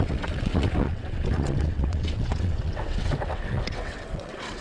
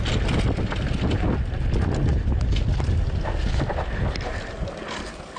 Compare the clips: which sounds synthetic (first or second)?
first